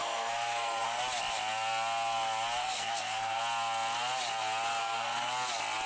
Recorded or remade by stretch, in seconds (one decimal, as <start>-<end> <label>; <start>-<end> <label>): 0.0-1.0 remade; 1.0-2.6 recorded; 2.6-3.4 remade; 3.4-4.8 recorded; 4.8-5.3 remade; 5.3-5.9 recorded